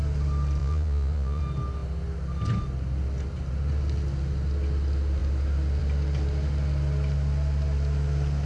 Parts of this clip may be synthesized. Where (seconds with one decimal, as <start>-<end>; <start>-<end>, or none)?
0.6-1.4